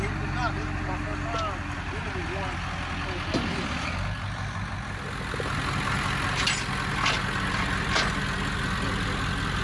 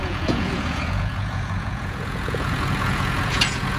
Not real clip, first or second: second